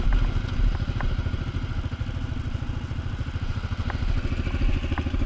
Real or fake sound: real